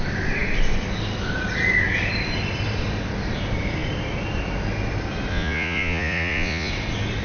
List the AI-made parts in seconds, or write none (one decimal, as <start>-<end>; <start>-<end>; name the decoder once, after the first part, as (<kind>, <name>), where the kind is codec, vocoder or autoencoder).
5.3-6.7 (vocoder, Vocos)